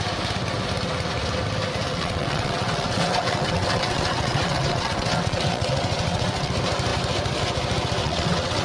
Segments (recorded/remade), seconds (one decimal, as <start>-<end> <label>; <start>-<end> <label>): 0.0-1.9 recorded; 1.9-6.5 remade; 6.5-8.0 recorded; 8.0-8.6 remade